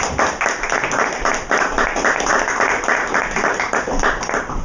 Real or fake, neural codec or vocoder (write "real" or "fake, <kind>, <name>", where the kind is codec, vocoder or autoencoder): fake, vocoder, BigVGAN v2